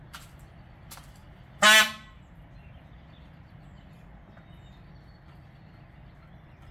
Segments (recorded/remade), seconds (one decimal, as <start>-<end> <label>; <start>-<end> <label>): 0.0-6.7 recorded